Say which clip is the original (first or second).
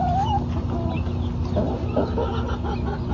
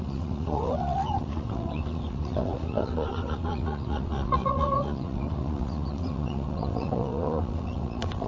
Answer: first